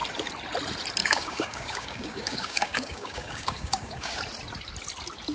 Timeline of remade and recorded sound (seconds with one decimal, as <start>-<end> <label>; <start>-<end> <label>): 0.0-1.0 recorded; 1.0-4.2 remade; 4.2-5.3 recorded

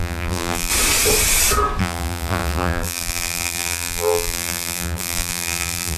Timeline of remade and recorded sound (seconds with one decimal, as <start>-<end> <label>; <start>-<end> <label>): 0.0-0.7 remade; 0.7-1.8 recorded; 1.8-6.0 remade

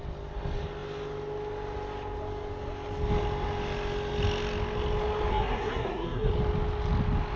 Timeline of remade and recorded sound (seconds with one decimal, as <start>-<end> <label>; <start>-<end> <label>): 0.0-5.3 recorded; 5.3-6.3 remade; 6.3-7.4 recorded

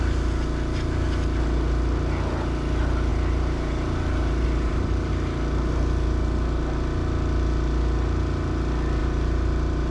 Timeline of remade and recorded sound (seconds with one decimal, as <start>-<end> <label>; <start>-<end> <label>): 0.0-3.1 recorded; 3.1-5.1 remade; 5.1-9.0 recorded; 9.0-9.9 remade